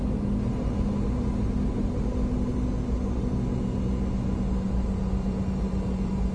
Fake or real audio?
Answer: real